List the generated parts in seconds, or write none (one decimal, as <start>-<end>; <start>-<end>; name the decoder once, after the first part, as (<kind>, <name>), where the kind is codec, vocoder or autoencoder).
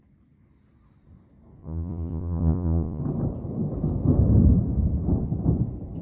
1.6-3.0 (vocoder, Vocos)